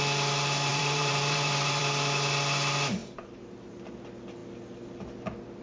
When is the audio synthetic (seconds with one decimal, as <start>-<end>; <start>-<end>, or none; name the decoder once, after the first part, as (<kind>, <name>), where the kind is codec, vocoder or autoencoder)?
0.7-1.8 (vocoder, BigVGAN v2); 3.0-3.8